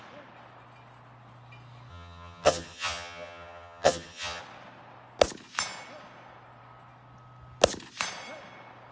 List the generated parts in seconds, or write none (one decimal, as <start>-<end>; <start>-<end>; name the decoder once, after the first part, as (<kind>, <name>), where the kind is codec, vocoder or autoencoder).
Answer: 1.9-4.4 (vocoder, HiFi-GAN)